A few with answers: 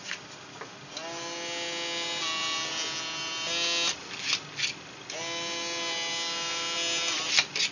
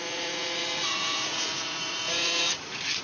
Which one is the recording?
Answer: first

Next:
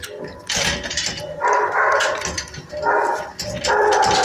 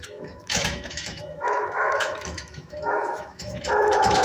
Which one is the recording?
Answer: first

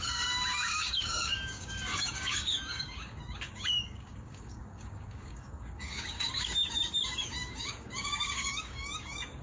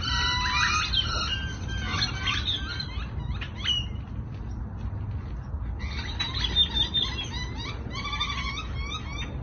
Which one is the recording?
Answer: second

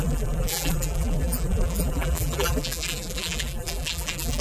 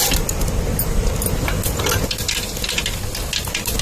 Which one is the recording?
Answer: second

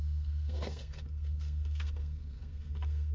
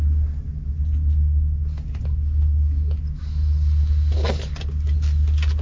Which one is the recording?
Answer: second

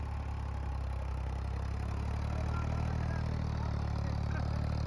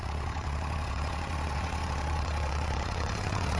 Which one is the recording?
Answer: first